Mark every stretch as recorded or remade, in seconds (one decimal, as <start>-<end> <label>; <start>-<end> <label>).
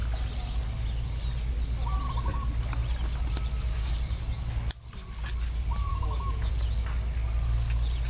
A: 0.0-5.9 recorded; 5.9-6.5 remade; 6.5-8.1 recorded